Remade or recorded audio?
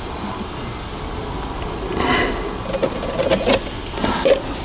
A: recorded